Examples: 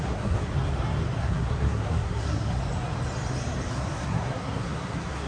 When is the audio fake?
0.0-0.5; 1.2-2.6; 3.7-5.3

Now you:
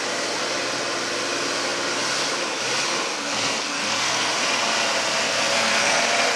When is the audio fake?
3.1-4.3; 5.2-6.0

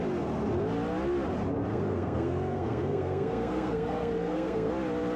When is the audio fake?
1.7-4.7

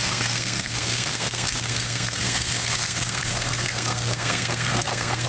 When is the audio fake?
0.0-5.3

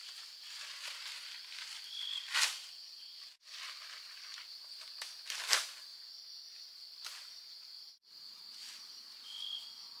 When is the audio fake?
none

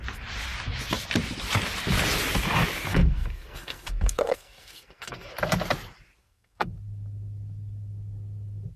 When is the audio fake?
2.9-5.3; 6.2-6.7